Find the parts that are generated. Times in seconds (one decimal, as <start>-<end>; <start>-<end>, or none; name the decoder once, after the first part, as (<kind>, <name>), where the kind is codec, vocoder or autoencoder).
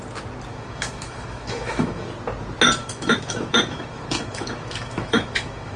0.5-2.1 (autoencoder, DAC-VAE); 2.8-5.8